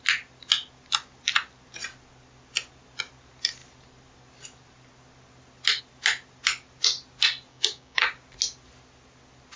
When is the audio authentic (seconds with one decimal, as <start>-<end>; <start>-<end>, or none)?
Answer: 0.0-7.5; 8.0-9.6